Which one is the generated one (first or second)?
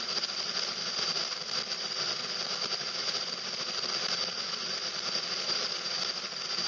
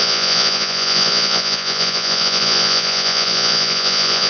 second